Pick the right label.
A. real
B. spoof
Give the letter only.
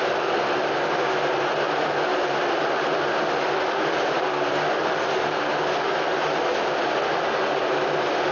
A